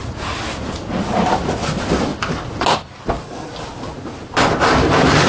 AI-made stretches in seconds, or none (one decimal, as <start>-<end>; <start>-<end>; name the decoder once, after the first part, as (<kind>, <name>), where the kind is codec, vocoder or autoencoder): none